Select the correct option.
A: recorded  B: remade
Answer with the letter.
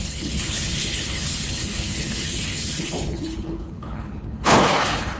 B